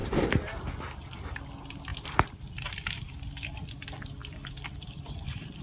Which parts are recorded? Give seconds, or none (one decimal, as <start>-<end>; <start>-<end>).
0.5-1.9